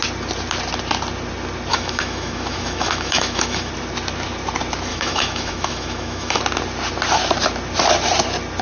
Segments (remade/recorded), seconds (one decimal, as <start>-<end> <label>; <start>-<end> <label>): 0.0-1.7 recorded; 1.7-3.7 remade; 3.7-4.9 recorded; 4.9-6.4 remade; 6.4-8.6 recorded